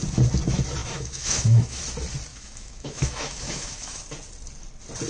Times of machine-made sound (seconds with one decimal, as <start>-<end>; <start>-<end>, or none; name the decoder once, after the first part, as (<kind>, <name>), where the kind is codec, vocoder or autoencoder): 0.8-1.8 (autoencoder, DAC-VAE); 2.3-4.0